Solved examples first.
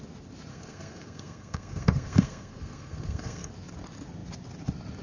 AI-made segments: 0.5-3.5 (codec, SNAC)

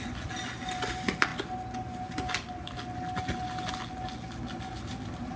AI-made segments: none

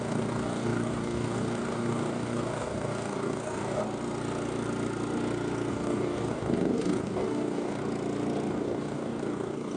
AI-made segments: 0.0-3.8 (codec, DAC); 5.7-7.8; 8.5-9.8

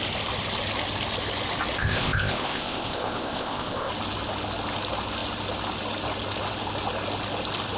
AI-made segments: 1.8-3.9 (codec, ZipCodec)

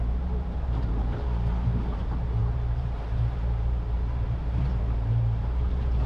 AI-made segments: 0.0-6.1 (vocoder, BigVGAN v2)